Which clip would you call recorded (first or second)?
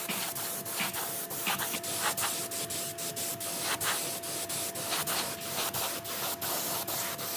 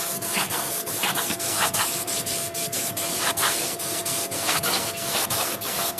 first